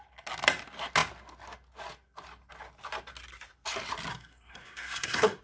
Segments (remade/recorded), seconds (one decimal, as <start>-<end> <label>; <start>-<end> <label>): 0.0-4.1 recorded; 4.1-5.4 remade